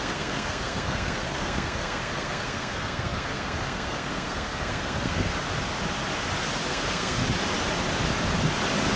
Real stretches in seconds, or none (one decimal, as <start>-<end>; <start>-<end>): 5.3-6.7; 7.2-9.0